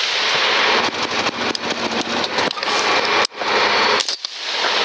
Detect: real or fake real